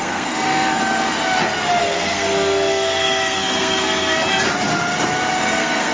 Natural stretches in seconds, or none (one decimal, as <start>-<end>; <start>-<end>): 0.8-1.8; 4.2-5.4

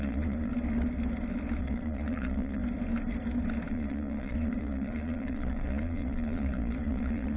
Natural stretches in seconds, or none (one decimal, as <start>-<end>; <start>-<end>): 0.5-1.6; 2.6-3.7

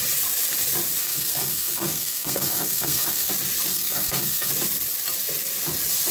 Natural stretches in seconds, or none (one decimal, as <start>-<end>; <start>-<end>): 0.0-1.0; 3.3-3.7; 4.5-6.1

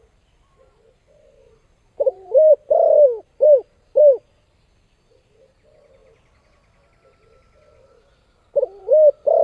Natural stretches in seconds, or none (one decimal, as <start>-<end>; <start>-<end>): 0.0-1.4; 2.5-9.4